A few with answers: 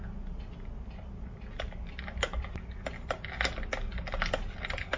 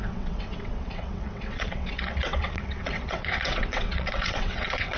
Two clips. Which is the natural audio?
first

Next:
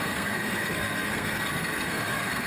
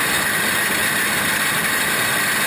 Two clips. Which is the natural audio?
second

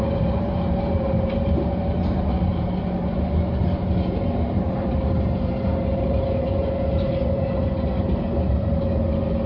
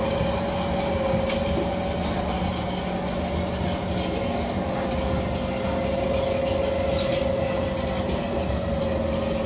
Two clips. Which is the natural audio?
second